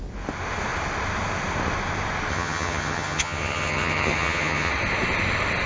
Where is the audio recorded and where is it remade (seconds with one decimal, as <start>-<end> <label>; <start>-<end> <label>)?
0.0-2.3 recorded; 2.3-4.7 remade; 4.7-5.7 recorded